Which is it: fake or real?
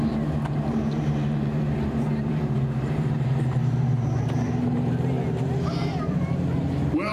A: fake